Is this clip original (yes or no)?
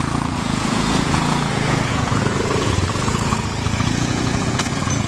no